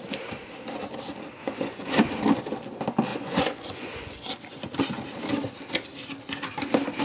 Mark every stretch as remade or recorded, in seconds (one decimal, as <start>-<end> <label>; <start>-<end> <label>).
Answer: 0.0-1.4 recorded; 1.4-2.0 remade; 2.0-3.1 recorded; 3.1-4.3 remade; 4.3-7.0 recorded